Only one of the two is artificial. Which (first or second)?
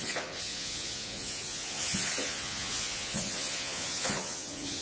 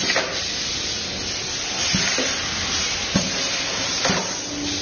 first